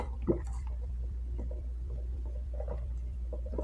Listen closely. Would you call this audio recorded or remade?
remade